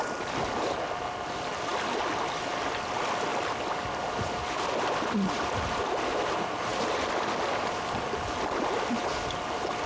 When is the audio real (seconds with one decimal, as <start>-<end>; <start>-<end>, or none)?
0.0-3.3; 5.8-6.7; 7.4-9.9